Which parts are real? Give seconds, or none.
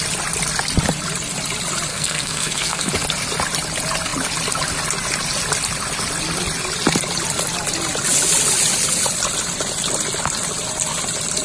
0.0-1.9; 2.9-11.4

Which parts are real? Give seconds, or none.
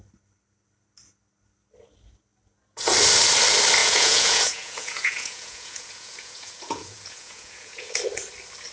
0.0-3.8; 7.9-8.7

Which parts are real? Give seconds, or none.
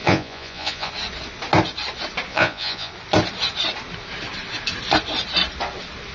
0.9-2.3; 2.9-6.1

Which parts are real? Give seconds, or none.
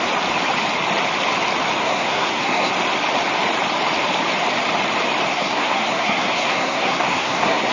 0.0-1.8; 2.7-5.3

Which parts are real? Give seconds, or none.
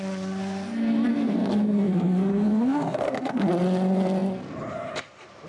0.0-1.1; 3.5-5.5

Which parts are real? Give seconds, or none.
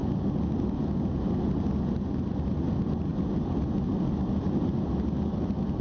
0.0-5.8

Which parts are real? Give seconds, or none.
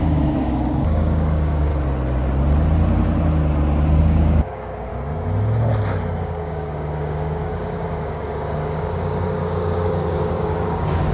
1.7-4.0; 4.9-6.2